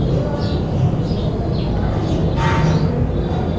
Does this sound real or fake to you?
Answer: real